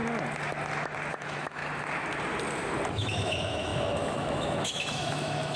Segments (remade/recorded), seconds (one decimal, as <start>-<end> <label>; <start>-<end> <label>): 0.0-1.1 recorded; 1.1-1.6 remade; 1.6-2.9 recorded; 2.9-5.6 remade